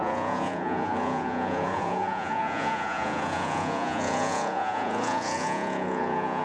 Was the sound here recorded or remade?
remade